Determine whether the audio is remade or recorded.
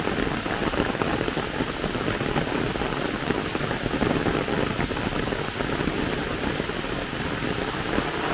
recorded